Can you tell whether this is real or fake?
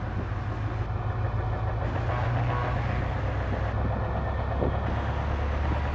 real